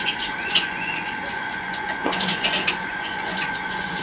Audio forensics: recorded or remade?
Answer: remade